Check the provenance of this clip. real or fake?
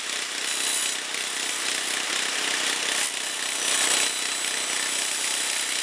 real